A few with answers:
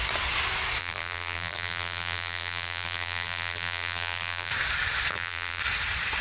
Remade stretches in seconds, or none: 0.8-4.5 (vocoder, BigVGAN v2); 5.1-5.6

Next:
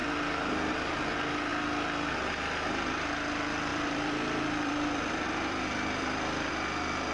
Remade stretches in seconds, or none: 0.0-0.7 (vocoder, BigVGAN v2); 3.7-6.5

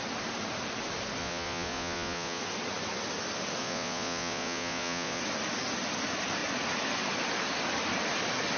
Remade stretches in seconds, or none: 1.2-2.4 (vocoder, Vocos); 3.6-5.2

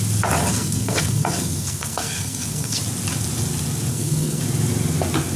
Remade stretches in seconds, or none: 0.5-2.8 (codec, SNAC); 3.9-4.4

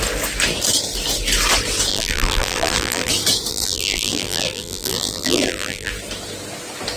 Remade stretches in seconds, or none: 1.9-3.1 (vocoder, BigVGAN v2); 3.5-5.9

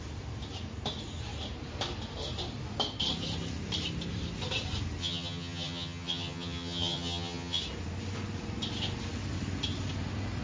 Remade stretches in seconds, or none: 5.0-7.6 (vocoder, HiFi-GAN)

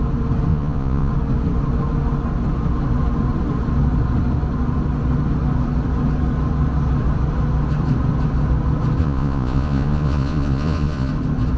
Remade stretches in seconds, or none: 0.5-1.1 (vocoder, Vocos); 9.0-11.1

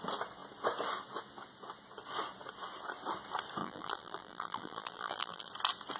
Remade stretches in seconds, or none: 3.6-5.5 (vocoder, BigVGAN v2)